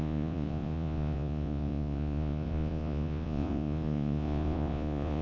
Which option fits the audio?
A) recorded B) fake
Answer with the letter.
B